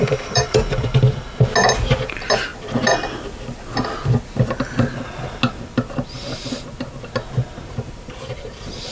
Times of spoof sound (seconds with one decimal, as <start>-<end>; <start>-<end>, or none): 0.0-0.9; 2.1-2.5; 7.6-8.9